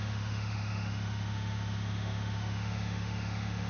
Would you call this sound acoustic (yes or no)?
no